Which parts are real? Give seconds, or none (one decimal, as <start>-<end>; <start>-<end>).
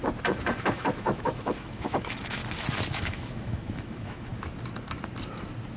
0.0-0.6; 2.4-2.9; 4.3-5.8